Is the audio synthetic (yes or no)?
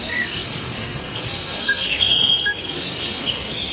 yes